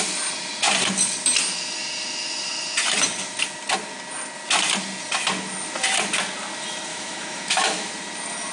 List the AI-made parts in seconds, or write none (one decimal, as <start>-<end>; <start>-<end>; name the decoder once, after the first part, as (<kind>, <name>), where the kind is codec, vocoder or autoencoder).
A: 6.9-7.9 (autoencoder, DAC-VAE)